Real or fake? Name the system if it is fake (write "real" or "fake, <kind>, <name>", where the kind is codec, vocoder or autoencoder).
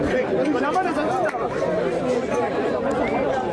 real